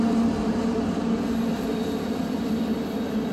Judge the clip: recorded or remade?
recorded